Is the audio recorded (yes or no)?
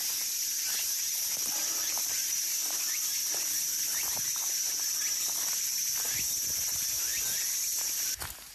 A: yes